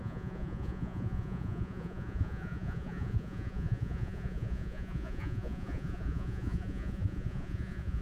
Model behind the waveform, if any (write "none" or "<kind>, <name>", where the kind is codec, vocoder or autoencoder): vocoder, Vocos